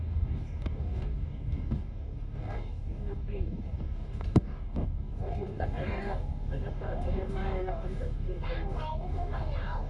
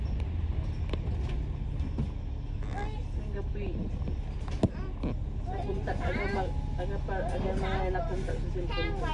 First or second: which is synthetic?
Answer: first